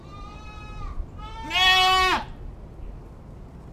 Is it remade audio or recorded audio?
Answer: recorded